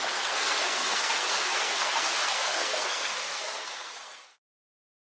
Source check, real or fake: fake